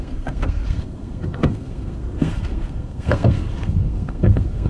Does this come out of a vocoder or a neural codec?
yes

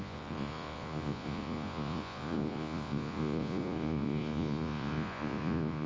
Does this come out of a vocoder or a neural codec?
yes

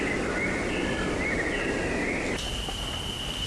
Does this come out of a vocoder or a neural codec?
no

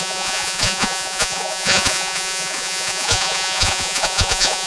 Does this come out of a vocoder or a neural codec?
yes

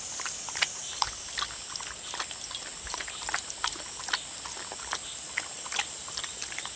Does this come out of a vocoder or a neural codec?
no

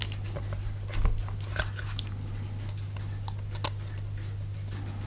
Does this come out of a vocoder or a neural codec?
no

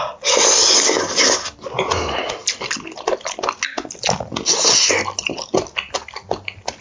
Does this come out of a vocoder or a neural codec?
no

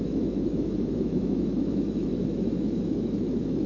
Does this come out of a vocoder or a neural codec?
yes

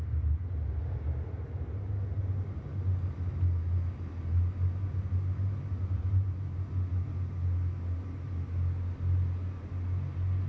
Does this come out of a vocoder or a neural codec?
no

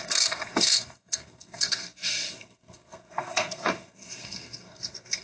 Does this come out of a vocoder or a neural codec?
yes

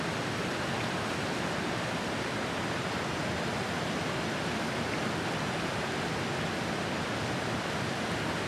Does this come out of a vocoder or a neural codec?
no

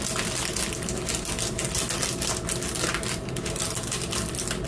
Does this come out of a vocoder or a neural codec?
no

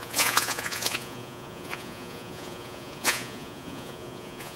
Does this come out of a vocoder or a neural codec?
yes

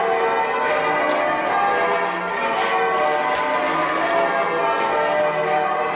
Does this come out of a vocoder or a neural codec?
no